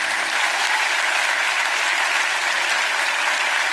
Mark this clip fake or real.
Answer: real